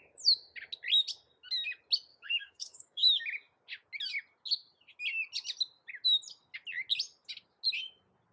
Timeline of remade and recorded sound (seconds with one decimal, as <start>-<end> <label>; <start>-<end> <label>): 0.0-2.1 recorded; 2.1-3.2 remade; 3.2-8.3 recorded